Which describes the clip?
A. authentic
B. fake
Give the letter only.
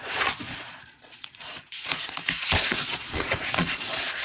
B